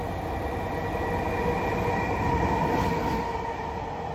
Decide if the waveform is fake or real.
real